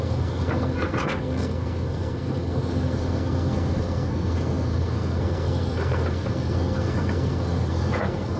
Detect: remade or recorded remade